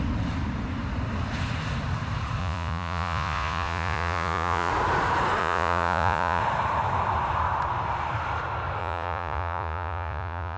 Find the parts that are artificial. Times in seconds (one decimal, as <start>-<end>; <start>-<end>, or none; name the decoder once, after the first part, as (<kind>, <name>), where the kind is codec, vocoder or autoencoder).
2.4-4.7 (vocoder, Vocos); 5.4-6.4; 8.8-10.6